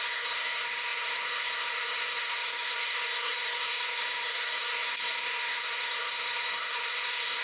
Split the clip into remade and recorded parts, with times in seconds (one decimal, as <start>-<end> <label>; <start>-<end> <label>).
0.0-7.4 remade